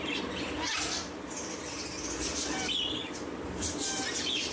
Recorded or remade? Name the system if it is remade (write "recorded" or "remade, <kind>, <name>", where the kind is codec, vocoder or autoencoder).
recorded